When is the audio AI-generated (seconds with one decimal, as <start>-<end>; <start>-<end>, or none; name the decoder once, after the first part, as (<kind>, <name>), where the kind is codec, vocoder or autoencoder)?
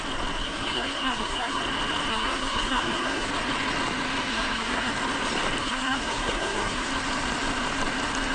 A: 0.4-1.6 (codec, SNAC); 2.1-3.3; 4.3-4.9; 5.6-6.9